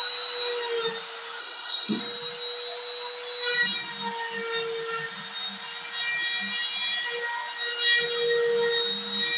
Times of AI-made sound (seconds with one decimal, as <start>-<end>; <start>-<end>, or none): 1.4-2.0